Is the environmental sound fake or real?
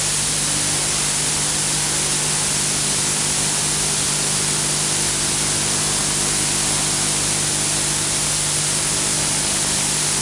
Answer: real